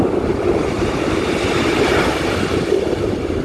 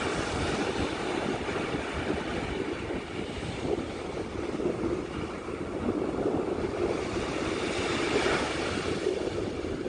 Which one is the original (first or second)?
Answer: first